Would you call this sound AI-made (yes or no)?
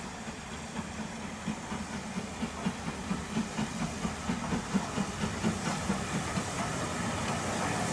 no